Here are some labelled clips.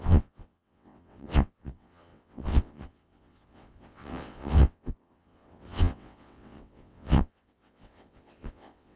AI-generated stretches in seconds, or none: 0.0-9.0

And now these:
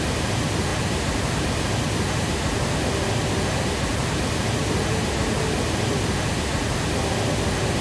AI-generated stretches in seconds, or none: none

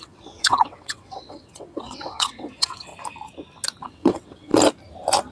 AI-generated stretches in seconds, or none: 0.0-2.9; 3.8-4.5

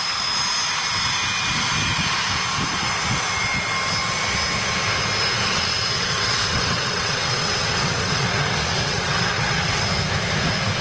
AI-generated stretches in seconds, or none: 5.5-9.8

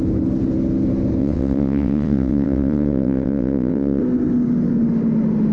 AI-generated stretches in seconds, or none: 1.2-4.0